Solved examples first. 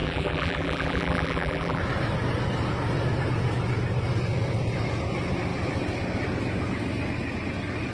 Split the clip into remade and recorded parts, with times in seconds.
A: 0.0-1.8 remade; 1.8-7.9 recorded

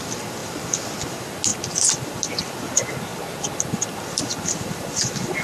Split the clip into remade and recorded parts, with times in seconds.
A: 0.0-5.4 recorded

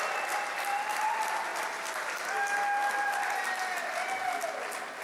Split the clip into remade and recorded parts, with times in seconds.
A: 0.0-1.5 recorded; 1.5-2.2 remade; 2.2-2.8 recorded; 2.8-3.9 remade; 3.9-5.0 recorded

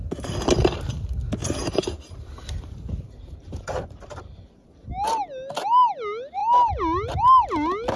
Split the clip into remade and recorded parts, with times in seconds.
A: 0.0-1.4 recorded; 1.4-4.9 remade; 4.9-8.0 recorded

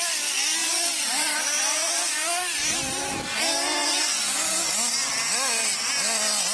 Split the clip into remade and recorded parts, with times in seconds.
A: 0.0-0.6 recorded; 0.6-2.8 remade; 2.8-6.5 recorded